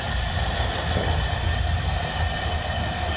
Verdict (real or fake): real